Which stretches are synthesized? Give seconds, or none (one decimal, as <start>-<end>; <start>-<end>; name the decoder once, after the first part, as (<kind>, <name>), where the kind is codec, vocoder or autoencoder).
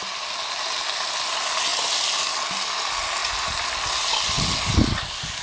none